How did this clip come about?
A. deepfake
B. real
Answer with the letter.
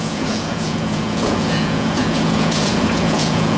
A